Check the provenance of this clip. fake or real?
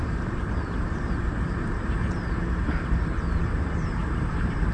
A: fake